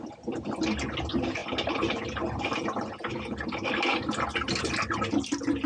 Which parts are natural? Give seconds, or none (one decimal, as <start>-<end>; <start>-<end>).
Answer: 0.0-5.7